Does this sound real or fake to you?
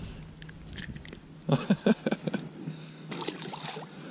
real